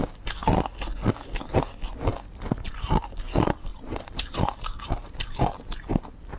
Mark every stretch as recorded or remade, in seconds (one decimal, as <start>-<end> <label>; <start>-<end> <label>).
0.0-6.4 recorded